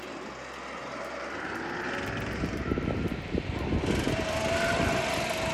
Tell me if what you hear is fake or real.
real